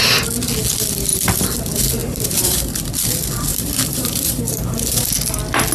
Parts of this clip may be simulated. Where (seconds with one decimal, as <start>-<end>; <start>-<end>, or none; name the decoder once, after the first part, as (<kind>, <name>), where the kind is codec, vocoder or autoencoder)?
2.0-2.7 (vocoder, BigVGAN v2); 3.5-5.1